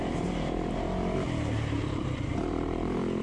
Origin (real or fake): fake